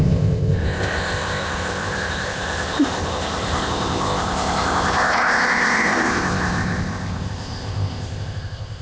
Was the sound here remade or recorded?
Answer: remade